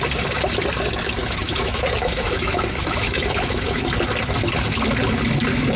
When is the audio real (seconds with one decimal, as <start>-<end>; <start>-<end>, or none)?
0.0-1.2; 3.8-5.8